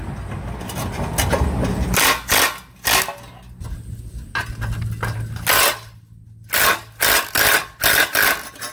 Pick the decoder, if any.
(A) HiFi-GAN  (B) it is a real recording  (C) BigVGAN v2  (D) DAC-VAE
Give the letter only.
B